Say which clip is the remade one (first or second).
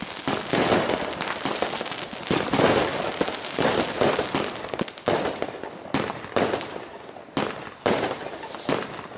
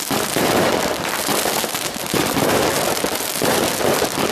second